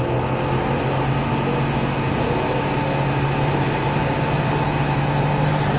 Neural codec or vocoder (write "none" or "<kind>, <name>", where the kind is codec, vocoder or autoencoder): none